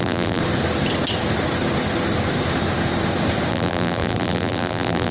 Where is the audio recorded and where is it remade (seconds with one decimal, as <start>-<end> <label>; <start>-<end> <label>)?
0.0-0.4 remade; 0.4-3.5 recorded; 3.5-5.1 remade